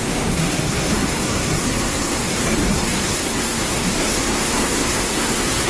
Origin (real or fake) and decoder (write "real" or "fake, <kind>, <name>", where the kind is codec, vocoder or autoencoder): fake, codec, SNAC